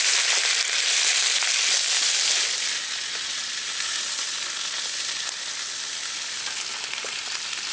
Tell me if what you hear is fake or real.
real